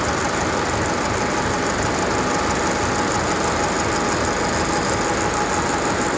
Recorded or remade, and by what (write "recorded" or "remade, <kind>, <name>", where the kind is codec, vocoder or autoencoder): recorded